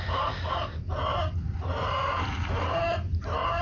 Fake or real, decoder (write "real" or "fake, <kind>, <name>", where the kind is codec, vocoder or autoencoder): real